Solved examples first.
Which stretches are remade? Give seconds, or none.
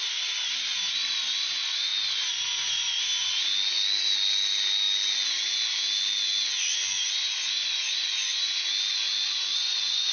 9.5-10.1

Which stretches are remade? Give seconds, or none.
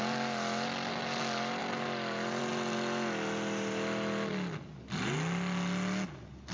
none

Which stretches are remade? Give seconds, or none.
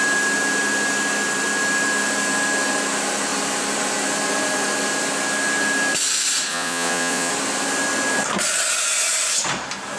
6.5-7.3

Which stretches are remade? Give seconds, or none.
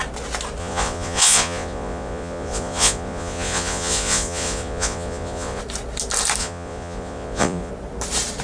0.6-5.6; 6.4-7.7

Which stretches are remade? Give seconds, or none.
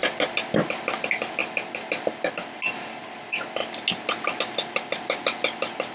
none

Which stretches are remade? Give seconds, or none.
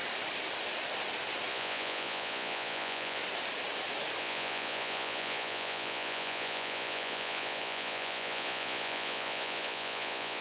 1.5-3.2; 4.2-10.4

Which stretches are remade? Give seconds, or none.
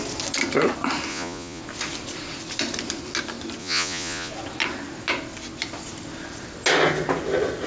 1.1-1.6; 3.6-4.3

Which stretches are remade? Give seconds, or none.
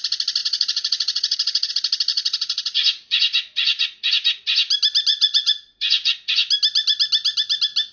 0.4-1.7; 2.1-4.1; 5.1-6.3